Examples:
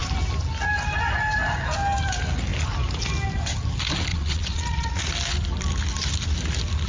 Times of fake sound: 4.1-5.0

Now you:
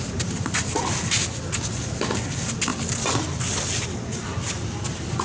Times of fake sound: none

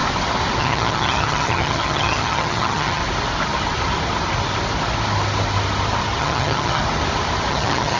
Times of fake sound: 0.6-3.0; 6.2-6.8; 7.5-8.0